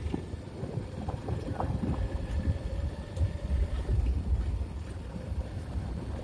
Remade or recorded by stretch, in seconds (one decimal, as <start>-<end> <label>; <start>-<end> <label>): 0.0-3.9 remade; 3.9-4.6 recorded; 4.6-6.2 remade